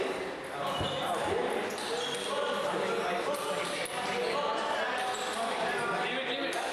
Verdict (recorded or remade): recorded